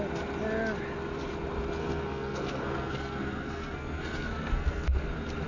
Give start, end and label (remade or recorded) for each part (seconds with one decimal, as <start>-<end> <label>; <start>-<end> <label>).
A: 0.0-1.8 recorded; 1.8-5.1 remade; 5.1-5.5 recorded